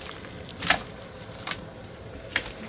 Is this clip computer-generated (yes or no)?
yes